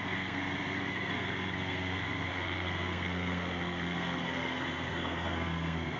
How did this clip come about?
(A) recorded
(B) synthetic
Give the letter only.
B